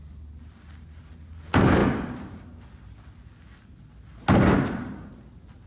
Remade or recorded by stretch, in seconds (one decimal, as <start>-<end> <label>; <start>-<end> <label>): 0.0-5.7 recorded

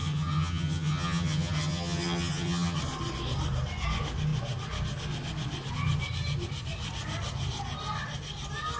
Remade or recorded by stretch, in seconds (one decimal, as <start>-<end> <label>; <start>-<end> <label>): 0.0-2.8 remade; 2.8-8.8 recorded

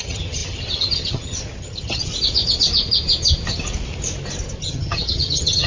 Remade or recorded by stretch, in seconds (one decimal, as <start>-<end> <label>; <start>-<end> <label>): 0.0-2.1 remade; 2.1-4.6 recorded; 4.6-5.7 remade

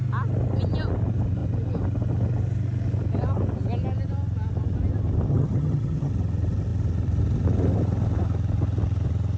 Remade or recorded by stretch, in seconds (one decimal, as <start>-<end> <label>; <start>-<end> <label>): 0.0-5.3 recorded; 5.3-6.1 remade; 6.1-9.4 recorded

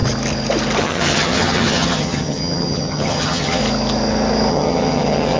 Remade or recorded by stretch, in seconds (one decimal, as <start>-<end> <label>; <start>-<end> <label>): 0.0-0.8 recorded; 0.8-3.6 remade; 3.6-4.5 recorded; 4.5-5.4 remade